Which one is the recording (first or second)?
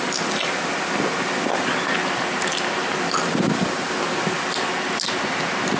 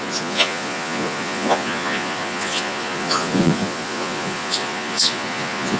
first